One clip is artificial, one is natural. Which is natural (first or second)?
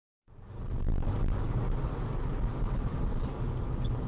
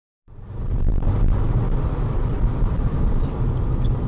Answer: first